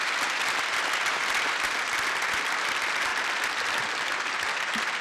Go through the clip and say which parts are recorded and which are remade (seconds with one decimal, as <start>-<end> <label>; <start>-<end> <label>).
0.0-5.0 recorded